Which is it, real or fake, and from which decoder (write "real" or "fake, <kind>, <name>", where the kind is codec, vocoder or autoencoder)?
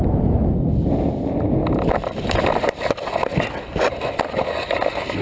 real